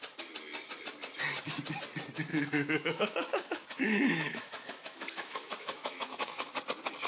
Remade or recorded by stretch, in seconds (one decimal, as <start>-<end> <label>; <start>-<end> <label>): 0.0-2.3 recorded; 2.3-6.6 remade; 6.6-7.1 recorded